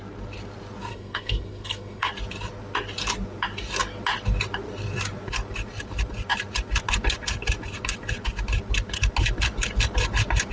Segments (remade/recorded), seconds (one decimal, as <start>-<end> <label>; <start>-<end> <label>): 0.0-0.9 recorded; 0.9-2.1 remade; 2.1-10.5 recorded